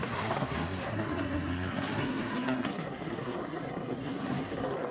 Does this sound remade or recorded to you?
remade